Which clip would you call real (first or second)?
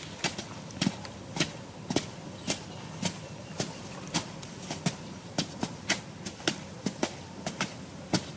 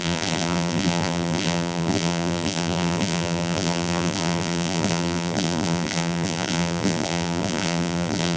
first